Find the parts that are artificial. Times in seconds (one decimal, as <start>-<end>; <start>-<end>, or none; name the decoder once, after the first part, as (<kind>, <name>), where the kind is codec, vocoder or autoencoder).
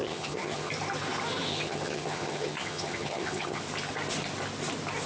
0.0-0.7 (vocoder, HiFi-GAN); 1.5-3.6